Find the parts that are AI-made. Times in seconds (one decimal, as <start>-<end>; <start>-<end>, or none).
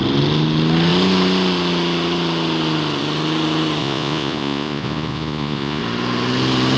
3.8-5.8